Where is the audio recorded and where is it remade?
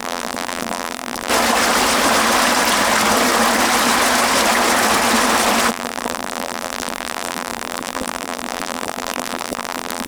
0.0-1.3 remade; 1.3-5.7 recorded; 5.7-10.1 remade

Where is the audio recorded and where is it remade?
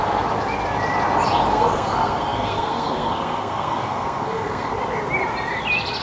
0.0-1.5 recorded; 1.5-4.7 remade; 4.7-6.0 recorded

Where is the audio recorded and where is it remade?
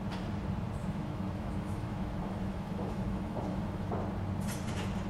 0.0-0.8 recorded; 0.8-3.9 remade; 3.9-5.1 recorded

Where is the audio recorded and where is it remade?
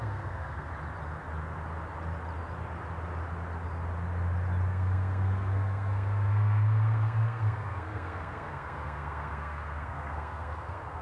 0.0-0.7 remade; 0.7-4.7 recorded; 4.7-11.0 remade